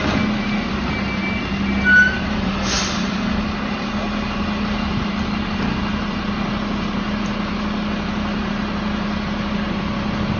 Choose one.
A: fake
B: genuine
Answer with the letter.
B